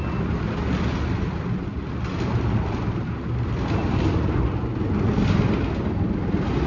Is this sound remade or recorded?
recorded